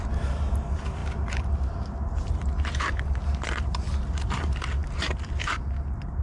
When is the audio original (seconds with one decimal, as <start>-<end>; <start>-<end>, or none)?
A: none